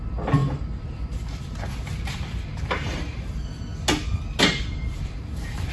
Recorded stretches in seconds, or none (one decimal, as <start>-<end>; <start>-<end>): 3.7-4.4